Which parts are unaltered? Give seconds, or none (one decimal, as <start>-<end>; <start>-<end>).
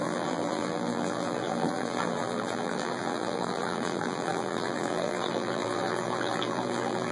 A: none